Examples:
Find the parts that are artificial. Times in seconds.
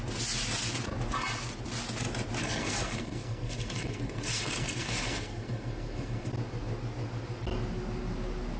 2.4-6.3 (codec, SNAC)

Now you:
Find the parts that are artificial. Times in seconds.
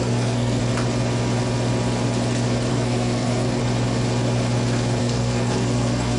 0.0-0.6 (codec, SNAC); 2.7-3.6; 5.0-6.2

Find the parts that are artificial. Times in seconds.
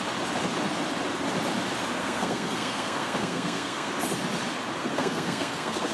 2.0-3.9 (codec, SNAC); 4.8-5.9